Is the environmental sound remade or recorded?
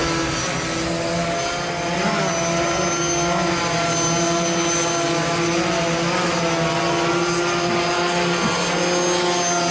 recorded